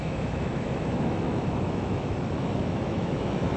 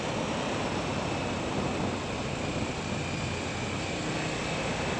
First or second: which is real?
second